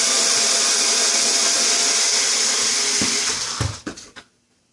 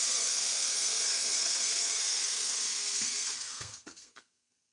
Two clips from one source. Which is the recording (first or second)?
first